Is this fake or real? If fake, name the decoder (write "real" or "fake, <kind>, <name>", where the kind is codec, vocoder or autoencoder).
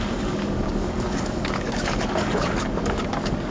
fake, codec, DAC